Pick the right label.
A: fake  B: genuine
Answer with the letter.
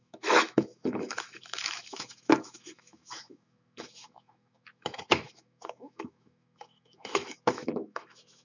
A